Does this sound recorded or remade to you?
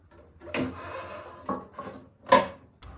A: recorded